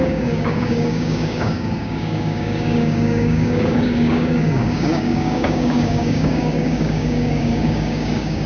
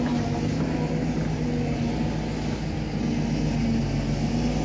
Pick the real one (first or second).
second